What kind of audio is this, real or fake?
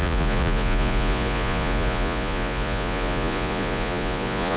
fake